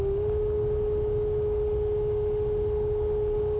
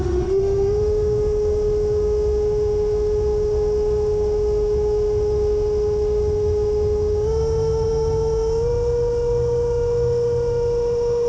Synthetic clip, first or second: second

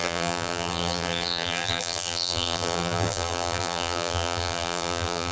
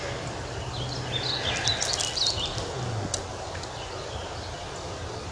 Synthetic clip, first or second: first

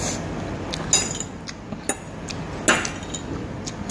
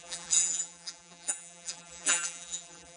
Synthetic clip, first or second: second